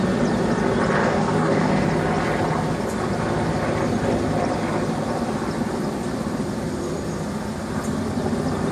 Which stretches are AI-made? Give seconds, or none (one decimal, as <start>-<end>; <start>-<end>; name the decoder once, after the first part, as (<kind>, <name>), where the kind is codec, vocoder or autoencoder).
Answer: 1.0-1.7 (codec, DAC)